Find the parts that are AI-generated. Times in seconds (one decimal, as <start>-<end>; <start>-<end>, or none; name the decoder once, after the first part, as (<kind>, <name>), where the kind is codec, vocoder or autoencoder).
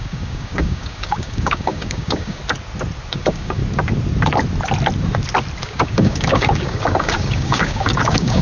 0.0-2.4 (codec, DAC); 3.1-3.6; 5.6-8.4